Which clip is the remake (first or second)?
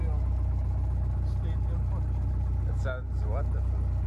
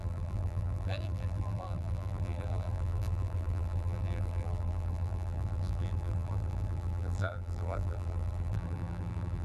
second